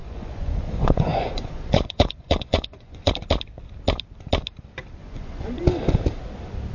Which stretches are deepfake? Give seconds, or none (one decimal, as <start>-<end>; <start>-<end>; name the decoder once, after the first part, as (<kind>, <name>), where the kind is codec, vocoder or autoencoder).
0.0-3.1 (vocoder, Vocos); 5.0-5.6